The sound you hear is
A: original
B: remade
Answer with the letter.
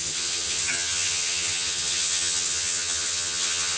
B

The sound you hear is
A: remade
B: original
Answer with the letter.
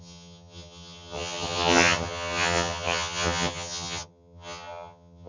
A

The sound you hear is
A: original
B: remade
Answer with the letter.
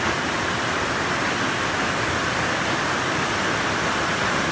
A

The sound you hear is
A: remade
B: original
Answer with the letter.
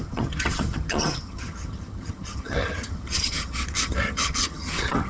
A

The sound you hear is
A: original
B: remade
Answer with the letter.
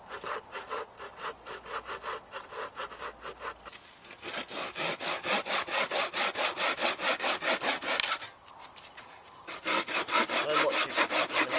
A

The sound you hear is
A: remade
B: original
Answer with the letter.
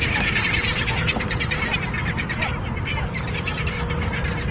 B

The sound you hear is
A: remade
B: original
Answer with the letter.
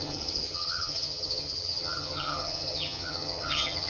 A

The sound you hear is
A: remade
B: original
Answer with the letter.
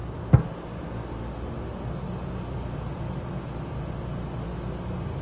B